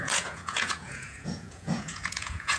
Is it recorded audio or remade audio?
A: remade